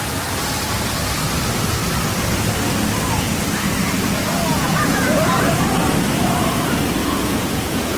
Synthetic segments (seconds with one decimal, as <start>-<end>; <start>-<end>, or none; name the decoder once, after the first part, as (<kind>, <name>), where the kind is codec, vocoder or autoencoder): 4.5-5.2 (vocoder, Vocos); 7.0-8.0